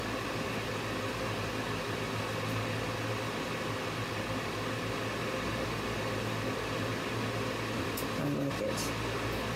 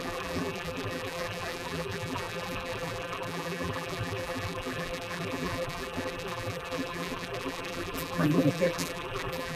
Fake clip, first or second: second